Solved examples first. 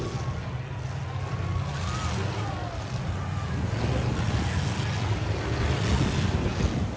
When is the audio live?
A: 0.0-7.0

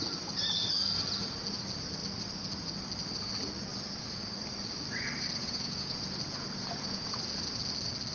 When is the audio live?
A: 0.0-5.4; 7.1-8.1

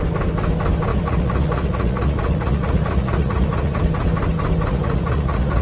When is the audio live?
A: 0.0-0.9; 3.8-4.7

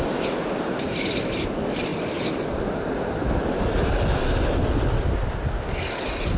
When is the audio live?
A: 0.0-6.4

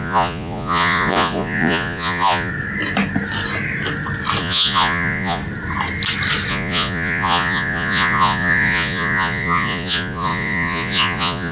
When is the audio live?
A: 2.5-4.4; 5.4-6.5